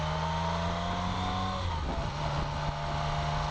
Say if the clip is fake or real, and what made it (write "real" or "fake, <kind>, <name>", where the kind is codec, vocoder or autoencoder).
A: real